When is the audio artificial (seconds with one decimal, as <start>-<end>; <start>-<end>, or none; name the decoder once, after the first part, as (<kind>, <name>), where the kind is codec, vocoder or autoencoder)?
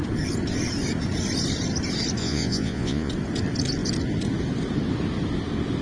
2.2-3.1 (vocoder, Vocos)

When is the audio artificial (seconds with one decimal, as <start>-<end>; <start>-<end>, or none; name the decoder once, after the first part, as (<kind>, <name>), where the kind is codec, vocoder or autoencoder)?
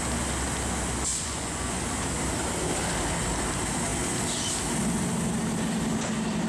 1.1-1.8 (vocoder, Vocos)